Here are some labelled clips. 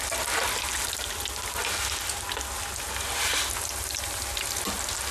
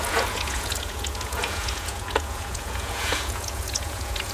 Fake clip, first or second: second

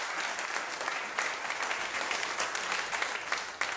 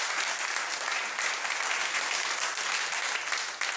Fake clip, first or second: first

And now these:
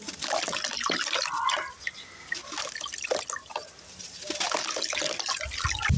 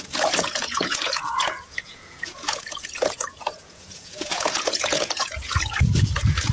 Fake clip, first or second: second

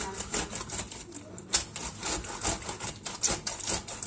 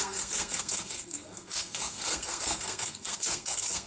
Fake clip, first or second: second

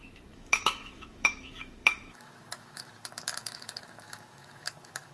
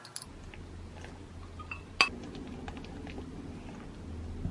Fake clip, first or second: first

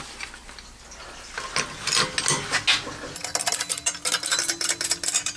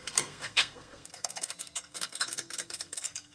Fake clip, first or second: second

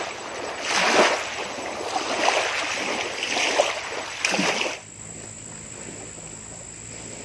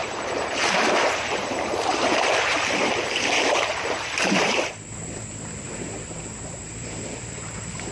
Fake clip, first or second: second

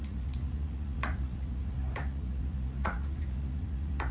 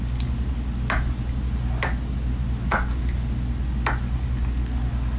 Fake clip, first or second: first